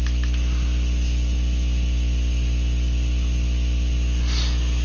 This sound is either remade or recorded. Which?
recorded